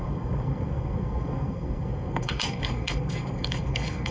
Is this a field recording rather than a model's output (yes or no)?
no